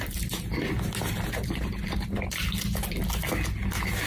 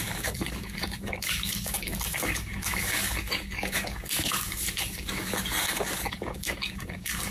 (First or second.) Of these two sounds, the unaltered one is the first